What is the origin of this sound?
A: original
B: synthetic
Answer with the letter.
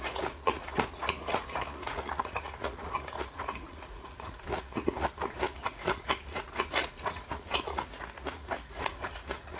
B